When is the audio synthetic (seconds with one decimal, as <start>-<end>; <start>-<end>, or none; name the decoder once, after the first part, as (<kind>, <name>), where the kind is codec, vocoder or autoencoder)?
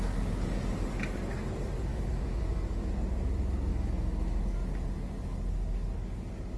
1.9-2.9 (autoencoder, DAC-VAE); 3.7-4.4